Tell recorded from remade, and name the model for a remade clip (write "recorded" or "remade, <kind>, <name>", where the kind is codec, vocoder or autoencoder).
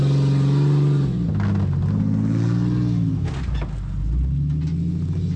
recorded